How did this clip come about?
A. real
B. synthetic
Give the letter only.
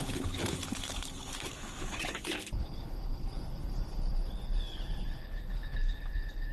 B